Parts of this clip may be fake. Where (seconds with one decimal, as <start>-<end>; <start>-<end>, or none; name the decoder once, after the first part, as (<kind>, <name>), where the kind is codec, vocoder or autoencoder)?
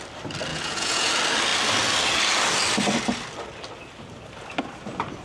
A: 0.5-1.1 (vocoder, Vocos)